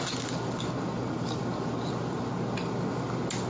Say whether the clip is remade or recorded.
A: recorded